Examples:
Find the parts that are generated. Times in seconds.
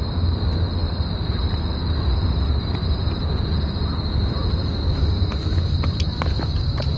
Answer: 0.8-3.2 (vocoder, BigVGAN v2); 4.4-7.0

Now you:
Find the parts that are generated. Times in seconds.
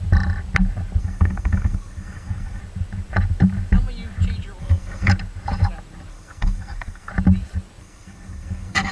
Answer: 1.0-2.6 (codec, SNAC); 4.6-5.1; 6.1-7.1; 7.8-8.9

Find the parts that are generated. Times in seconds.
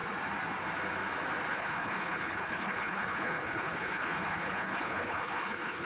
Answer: 1.5-5.8 (codec, HILCodec)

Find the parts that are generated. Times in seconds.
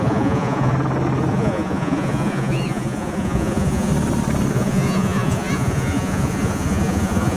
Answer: 0.0-0.7 (vocoder, Vocos); 1.3-3.9; 4.5-7.4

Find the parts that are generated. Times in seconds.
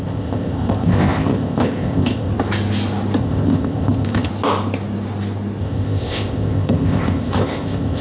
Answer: 0.0-2.3 (codec, ZipCodec); 3.2-4.3; 5.6-8.0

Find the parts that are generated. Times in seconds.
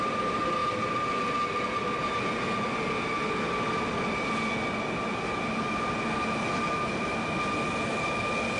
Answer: none